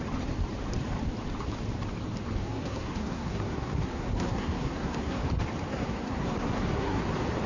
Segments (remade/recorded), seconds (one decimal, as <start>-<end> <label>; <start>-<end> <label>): 0.0-2.4 recorded; 2.4-5.2 remade; 5.2-5.7 recorded; 5.7-7.0 remade; 7.0-7.5 recorded